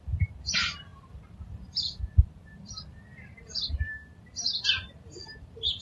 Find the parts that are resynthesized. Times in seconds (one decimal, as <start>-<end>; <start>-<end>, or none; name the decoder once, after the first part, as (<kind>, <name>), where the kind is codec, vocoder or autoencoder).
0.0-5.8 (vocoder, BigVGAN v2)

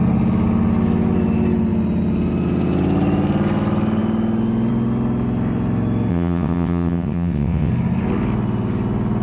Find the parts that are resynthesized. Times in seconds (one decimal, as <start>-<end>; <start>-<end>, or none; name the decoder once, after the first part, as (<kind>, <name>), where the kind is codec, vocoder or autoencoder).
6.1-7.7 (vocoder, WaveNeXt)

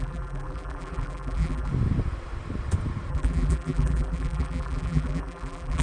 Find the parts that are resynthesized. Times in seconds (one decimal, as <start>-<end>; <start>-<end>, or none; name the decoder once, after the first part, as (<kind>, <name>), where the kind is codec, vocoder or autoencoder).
0.0-1.7 (vocoder, BigVGAN v2); 3.1-5.8